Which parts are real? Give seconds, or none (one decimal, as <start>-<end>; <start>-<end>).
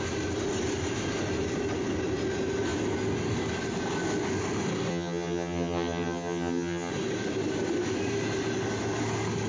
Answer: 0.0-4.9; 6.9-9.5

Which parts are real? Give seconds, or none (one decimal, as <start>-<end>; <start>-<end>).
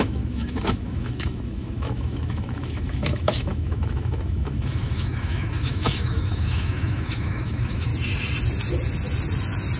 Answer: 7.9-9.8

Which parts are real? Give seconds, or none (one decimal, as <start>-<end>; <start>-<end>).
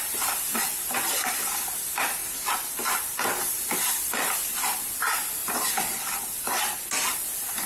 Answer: 2.2-3.4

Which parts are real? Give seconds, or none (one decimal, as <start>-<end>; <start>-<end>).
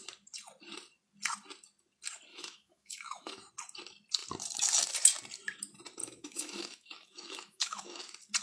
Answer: 0.0-2.3; 3.5-6.0; 8.0-8.4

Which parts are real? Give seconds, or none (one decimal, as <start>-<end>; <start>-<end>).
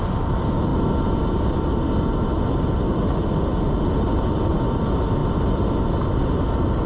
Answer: 0.0-6.9